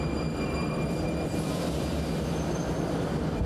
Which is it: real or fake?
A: fake